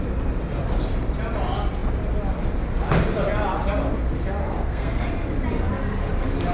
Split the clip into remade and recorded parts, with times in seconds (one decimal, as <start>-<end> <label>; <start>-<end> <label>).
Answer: 0.0-4.4 recorded; 4.4-5.1 remade; 5.1-6.5 recorded